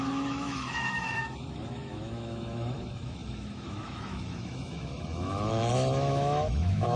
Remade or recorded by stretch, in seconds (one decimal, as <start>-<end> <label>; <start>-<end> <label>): 0.0-7.0 remade